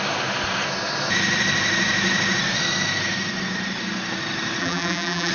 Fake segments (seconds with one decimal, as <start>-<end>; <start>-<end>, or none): 4.6-5.3